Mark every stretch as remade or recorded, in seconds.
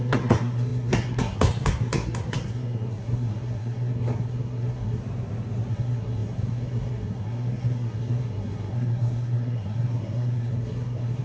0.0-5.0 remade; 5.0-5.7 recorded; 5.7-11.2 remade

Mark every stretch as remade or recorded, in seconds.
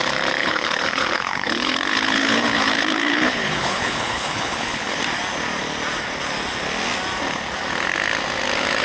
0.0-0.4 recorded; 0.4-5.0 remade; 5.0-8.8 recorded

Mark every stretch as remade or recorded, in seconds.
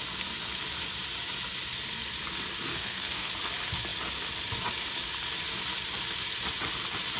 0.0-2.7 recorded; 2.7-3.3 remade; 3.3-7.2 recorded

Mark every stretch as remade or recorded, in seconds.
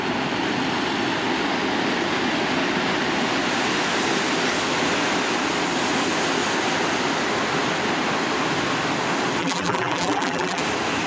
0.0-9.4 recorded; 9.4-10.6 remade; 10.6-11.1 recorded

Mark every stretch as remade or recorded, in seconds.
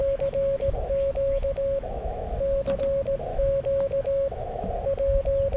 0.0-2.8 remade; 2.8-3.3 recorded; 3.3-4.7 remade; 4.7-5.6 recorded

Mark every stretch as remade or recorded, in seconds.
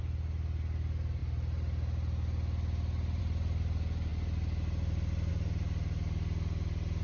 0.0-7.0 recorded